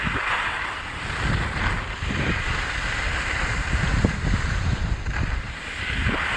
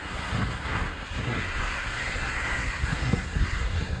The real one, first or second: first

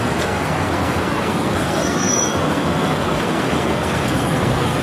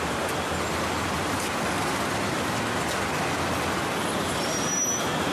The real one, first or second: second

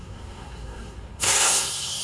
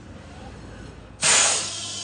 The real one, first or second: second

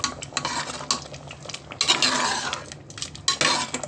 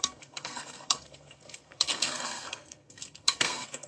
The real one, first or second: first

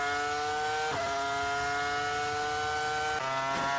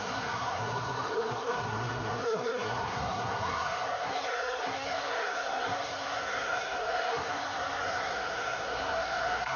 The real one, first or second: first